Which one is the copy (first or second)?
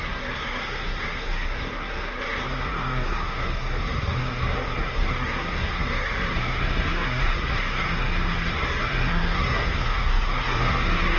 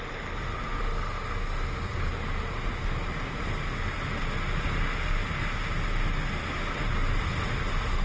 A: first